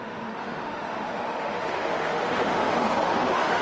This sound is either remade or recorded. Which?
remade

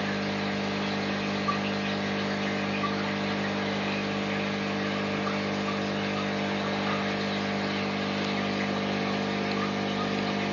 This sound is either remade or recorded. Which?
recorded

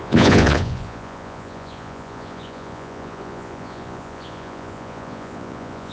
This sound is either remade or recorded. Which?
remade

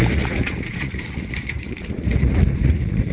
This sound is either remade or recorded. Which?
remade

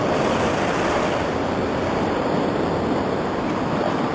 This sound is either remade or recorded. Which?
recorded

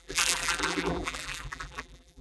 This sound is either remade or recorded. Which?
remade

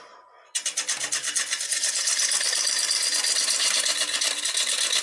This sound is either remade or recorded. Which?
recorded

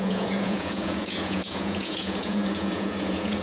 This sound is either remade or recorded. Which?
remade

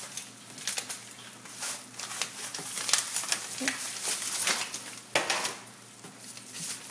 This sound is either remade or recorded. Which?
recorded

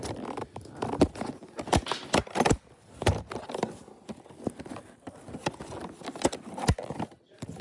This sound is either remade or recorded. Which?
recorded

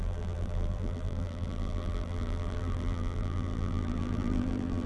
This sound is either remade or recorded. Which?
remade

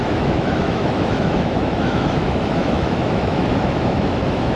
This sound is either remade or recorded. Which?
remade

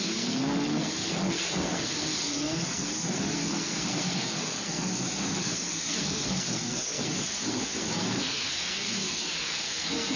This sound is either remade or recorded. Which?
remade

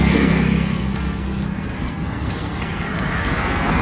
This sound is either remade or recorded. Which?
remade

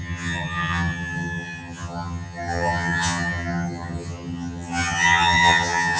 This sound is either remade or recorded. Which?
remade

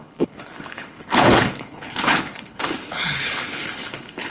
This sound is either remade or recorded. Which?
remade